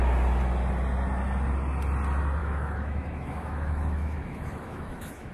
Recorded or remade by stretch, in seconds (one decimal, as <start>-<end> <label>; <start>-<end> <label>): 0.0-2.4 recorded; 2.4-5.3 remade

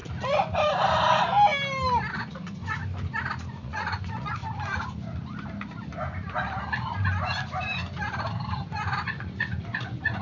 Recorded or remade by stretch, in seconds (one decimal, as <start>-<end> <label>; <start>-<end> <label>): 0.0-2.1 recorded; 2.1-2.8 remade; 2.8-3.5 recorded; 3.5-4.4 remade; 4.4-8.7 recorded; 8.7-10.2 remade